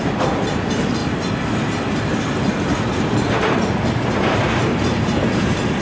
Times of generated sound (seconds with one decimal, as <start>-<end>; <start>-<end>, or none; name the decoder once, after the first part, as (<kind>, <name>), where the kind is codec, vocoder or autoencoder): 0.0-5.8 (vocoder, BigVGAN v2)